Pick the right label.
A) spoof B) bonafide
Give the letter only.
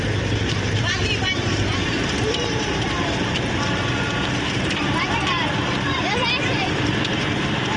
A